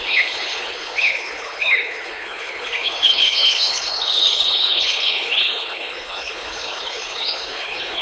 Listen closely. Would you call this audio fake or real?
fake